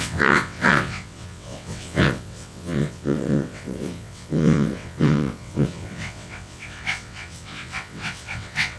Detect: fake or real fake